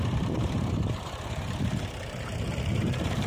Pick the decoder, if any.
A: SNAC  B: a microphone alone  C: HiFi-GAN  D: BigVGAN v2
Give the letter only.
D